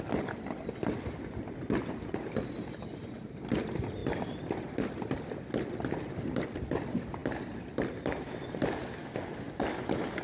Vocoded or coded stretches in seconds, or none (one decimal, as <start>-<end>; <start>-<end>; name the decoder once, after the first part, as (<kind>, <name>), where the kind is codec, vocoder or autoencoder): none